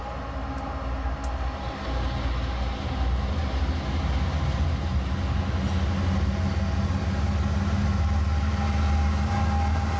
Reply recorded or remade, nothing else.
recorded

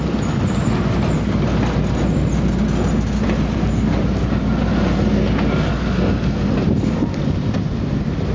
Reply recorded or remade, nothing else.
recorded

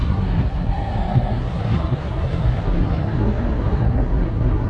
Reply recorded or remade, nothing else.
remade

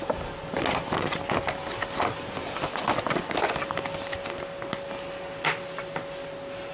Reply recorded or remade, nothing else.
recorded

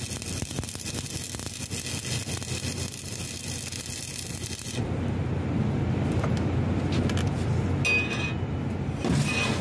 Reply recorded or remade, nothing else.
recorded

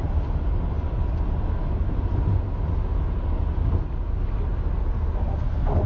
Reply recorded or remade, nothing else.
recorded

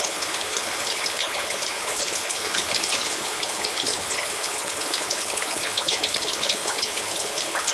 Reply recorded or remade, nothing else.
remade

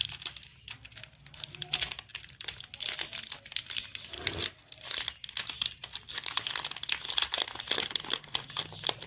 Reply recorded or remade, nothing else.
recorded